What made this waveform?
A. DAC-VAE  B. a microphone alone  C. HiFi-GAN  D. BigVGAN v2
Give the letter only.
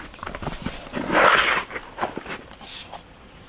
D